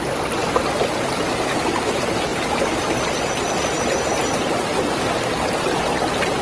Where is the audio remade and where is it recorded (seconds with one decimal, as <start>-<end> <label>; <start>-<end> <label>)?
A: 0.0-6.4 recorded